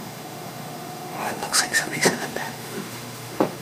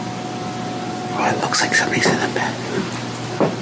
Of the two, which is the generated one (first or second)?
first